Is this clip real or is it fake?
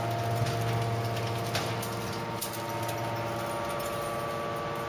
real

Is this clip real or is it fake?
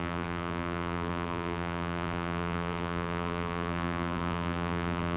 fake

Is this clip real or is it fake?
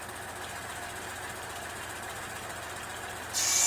real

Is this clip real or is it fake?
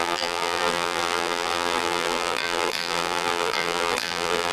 fake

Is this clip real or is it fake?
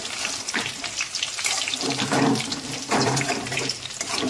fake